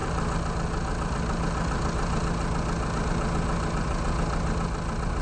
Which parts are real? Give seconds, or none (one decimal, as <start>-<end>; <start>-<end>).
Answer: 0.0-5.2